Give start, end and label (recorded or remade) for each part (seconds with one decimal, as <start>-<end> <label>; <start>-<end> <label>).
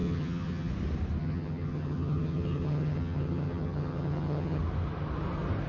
0.0-0.7 remade; 0.7-1.2 recorded; 1.2-4.6 remade; 4.6-5.7 recorded